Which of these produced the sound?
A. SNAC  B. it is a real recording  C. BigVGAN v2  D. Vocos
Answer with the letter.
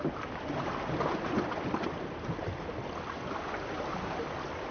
B